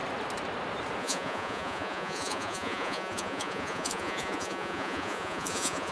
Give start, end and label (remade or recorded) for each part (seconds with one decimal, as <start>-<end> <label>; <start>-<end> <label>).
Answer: 0.0-1.0 recorded; 1.0-5.9 remade